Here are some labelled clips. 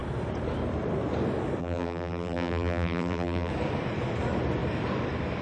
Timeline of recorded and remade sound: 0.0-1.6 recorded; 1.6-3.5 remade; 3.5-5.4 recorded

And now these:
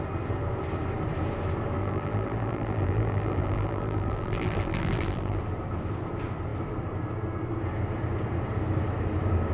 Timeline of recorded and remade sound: 0.0-1.8 recorded; 1.8-5.4 remade; 5.4-9.5 recorded